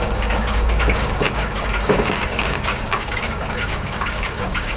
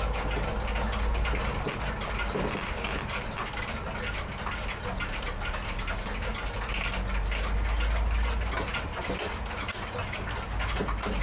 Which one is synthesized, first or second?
first